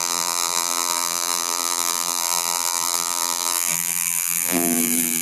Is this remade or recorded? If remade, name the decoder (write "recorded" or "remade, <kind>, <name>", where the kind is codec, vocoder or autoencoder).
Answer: remade, vocoder, BigVGAN v2